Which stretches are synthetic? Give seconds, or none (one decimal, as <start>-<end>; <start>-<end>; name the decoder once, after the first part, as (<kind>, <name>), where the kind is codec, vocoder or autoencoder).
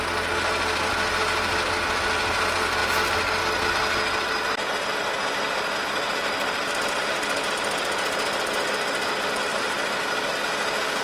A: 9.5-10.3 (vocoder, BigVGAN v2)